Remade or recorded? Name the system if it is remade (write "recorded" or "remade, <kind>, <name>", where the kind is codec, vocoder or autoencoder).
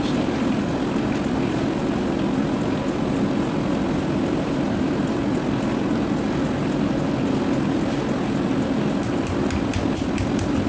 recorded